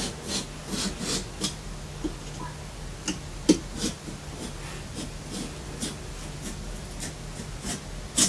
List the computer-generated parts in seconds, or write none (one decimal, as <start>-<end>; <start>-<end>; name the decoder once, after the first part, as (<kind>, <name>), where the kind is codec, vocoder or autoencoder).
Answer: none